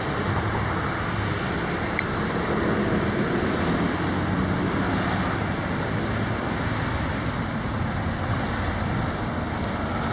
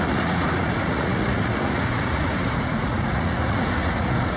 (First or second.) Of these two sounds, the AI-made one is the second